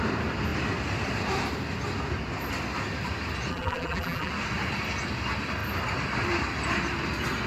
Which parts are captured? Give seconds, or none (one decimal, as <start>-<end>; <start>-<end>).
0.0-3.5; 4.3-7.5